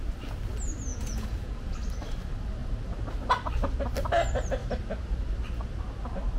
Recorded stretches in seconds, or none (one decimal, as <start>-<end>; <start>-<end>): 0.0-0.9; 1.6-6.4